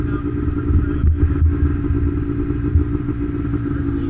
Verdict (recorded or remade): recorded